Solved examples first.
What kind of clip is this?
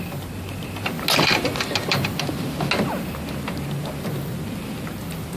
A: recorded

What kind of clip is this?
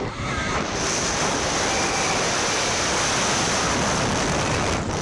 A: remade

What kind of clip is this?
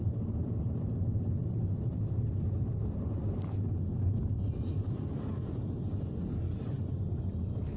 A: remade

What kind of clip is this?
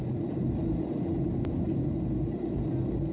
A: recorded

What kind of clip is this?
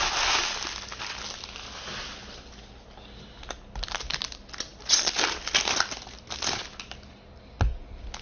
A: recorded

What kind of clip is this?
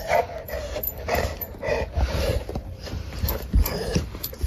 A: remade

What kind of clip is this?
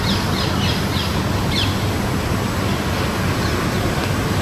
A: recorded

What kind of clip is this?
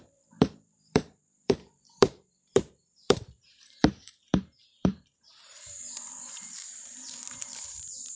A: remade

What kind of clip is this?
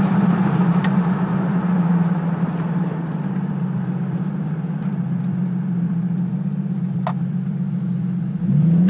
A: remade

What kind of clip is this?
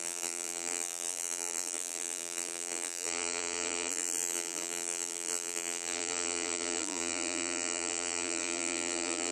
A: remade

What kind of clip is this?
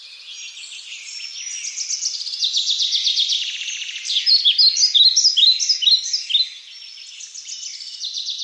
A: recorded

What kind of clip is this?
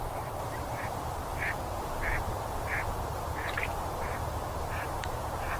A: remade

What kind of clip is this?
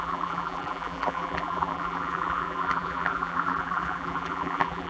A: remade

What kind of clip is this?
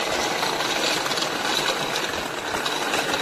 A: recorded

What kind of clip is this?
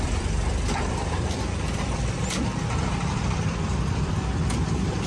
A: remade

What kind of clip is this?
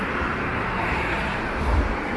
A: remade